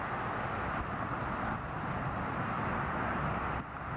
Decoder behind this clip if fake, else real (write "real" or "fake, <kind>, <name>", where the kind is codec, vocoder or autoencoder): real